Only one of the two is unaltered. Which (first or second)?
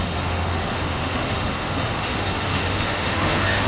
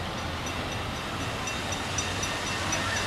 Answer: second